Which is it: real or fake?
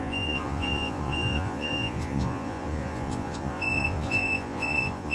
fake